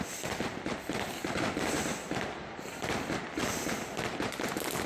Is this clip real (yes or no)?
yes